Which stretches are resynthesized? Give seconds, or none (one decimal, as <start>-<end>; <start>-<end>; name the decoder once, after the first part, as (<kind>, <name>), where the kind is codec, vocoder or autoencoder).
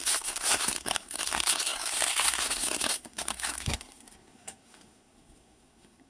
0.0-6.1 (codec, SNAC)